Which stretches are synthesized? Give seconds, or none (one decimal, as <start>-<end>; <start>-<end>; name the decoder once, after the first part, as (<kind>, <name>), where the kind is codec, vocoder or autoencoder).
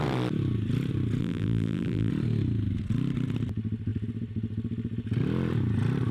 1.2-2.1 (vocoder, BigVGAN v2)